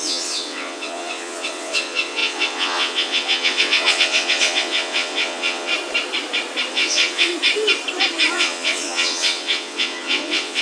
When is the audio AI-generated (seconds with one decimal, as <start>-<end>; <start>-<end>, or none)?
0.0-5.7; 6.7-7.3; 8.3-10.6